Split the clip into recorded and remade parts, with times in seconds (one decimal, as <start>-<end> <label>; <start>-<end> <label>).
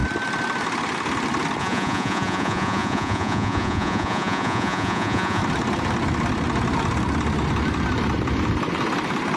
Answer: 0.0-1.6 recorded; 1.6-5.4 remade; 5.4-9.4 recorded